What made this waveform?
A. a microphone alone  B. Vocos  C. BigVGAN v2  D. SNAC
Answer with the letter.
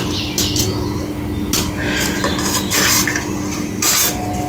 A